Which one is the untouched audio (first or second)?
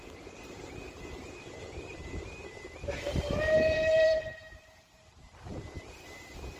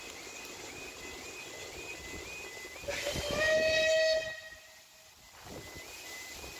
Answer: second